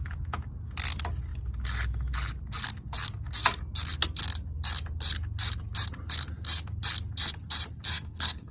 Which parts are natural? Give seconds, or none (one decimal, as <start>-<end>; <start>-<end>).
0.0-7.9